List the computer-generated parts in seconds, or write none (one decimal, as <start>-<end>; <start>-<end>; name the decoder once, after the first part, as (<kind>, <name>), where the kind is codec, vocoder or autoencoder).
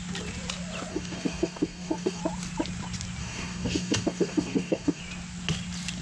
0.9-2.2 (codec, DAC); 3.2-5.0